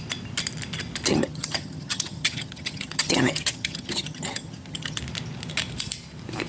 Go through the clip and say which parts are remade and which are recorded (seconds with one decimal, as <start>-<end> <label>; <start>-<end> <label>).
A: 0.0-1.1 recorded; 1.1-5.0 remade; 5.0-6.5 recorded